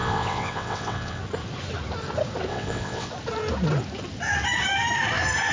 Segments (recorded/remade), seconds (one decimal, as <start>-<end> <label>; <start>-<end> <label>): 0.0-1.2 remade; 1.2-2.5 recorded; 2.5-3.1 remade; 3.1-5.5 recorded